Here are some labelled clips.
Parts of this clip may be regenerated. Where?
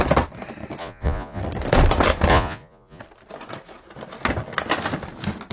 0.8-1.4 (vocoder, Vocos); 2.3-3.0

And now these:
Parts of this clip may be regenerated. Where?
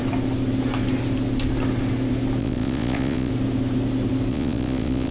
2.4-3.3 (vocoder, Vocos); 4.3-5.1